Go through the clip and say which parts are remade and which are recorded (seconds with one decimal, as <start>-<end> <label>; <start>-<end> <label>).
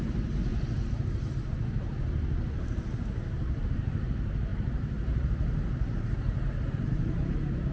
0.0-0.5 remade; 0.5-3.7 recorded; 3.7-7.7 remade